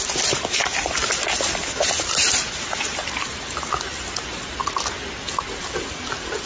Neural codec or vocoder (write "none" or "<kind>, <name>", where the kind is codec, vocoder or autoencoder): none